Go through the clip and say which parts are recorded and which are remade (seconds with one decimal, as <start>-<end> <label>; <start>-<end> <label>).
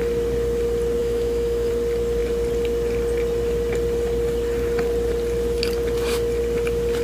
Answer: 0.0-1.0 recorded; 1.0-1.7 remade; 1.7-7.0 recorded